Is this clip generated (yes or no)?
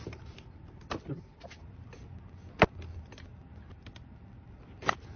no